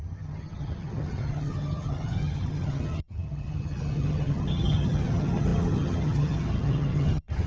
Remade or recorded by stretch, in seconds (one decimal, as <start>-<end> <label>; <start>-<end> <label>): 0.0-7.5 remade